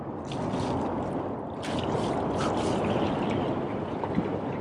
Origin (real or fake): real